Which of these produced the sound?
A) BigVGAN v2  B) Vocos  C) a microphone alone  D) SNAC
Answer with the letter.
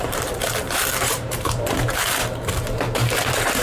A